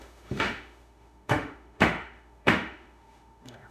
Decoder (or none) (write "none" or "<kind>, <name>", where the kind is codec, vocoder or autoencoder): autoencoder, DAC-VAE